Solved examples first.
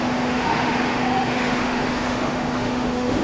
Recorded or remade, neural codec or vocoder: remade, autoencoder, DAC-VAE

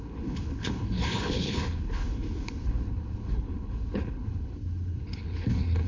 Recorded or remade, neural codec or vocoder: remade, codec, HILCodec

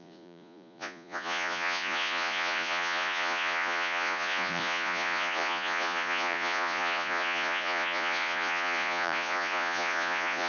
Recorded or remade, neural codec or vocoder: remade, vocoder, Vocos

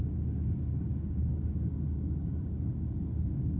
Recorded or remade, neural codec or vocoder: remade, codec, DAC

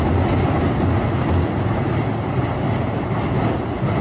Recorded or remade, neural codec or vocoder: recorded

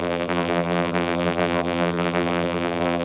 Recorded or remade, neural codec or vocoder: remade, vocoder, BigVGAN v2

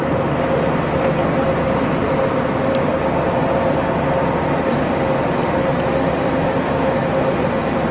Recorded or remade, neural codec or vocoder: recorded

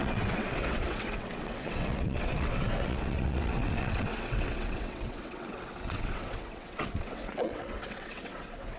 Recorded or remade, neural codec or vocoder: remade, vocoder, WaveNeXt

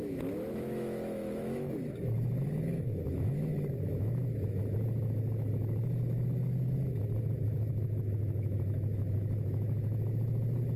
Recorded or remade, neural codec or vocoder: remade, autoencoder, DAC-VAE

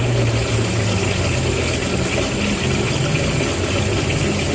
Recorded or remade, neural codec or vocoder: recorded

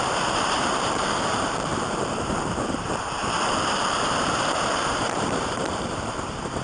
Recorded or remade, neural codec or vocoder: remade, vocoder, BigVGAN v2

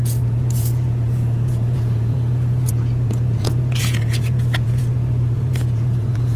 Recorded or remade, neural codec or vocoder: remade, vocoder, Vocos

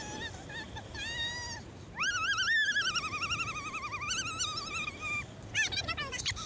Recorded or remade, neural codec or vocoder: recorded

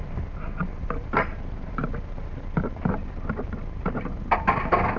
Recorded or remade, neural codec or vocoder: recorded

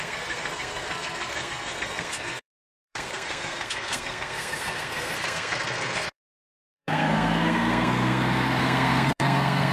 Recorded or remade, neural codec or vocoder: remade, codec, SNAC